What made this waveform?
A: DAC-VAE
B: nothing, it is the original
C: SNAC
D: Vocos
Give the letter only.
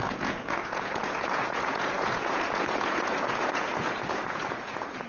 D